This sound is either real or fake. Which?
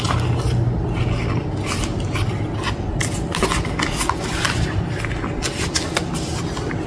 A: real